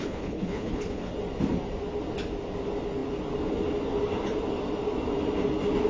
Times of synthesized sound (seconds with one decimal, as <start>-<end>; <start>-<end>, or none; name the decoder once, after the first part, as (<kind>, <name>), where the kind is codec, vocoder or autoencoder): 0.0-1.1 (codec, HILCodec)